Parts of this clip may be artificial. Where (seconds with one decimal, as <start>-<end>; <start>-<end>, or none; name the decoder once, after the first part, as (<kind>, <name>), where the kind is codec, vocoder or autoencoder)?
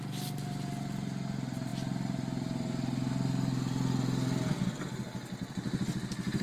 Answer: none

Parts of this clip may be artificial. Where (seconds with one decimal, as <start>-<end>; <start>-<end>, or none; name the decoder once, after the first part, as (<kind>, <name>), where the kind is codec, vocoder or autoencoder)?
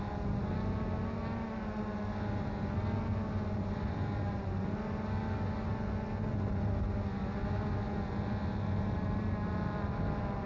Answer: none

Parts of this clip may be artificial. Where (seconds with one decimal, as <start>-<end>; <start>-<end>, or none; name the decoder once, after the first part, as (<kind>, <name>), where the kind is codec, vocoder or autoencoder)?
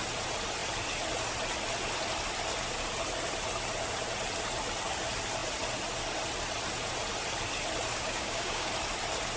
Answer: 7.9-8.7 (codec, DAC)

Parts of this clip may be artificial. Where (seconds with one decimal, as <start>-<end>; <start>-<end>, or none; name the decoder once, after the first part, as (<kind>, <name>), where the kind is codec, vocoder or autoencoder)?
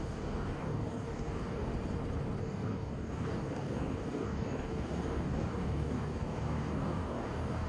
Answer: 0.0-1.7 (codec, DAC); 2.4-7.7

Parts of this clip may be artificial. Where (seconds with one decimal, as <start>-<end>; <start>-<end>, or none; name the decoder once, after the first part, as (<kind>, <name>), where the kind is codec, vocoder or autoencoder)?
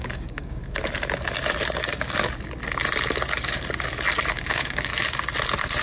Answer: 0.0-0.8 (codec, DAC); 4.3-4.9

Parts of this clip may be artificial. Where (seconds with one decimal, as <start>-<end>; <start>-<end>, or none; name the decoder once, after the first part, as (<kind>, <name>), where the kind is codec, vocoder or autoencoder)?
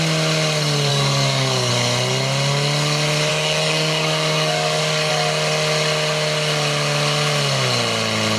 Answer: 0.9-1.7 (codec, DAC); 3.3-5.1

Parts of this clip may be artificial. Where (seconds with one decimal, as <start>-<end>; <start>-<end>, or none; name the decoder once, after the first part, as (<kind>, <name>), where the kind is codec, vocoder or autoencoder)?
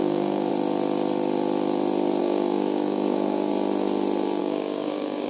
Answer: 0.0-0.5 (codec, DAC); 2.2-3.5; 4.4-5.3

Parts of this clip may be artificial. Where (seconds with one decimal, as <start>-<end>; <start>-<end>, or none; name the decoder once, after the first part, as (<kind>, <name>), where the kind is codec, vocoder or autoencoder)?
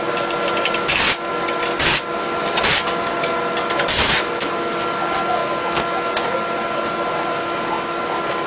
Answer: none